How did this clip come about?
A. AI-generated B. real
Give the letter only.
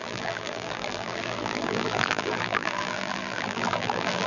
A